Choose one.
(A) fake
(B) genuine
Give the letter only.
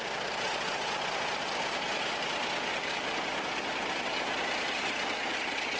B